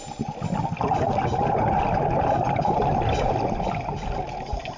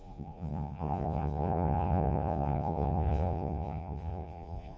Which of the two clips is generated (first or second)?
second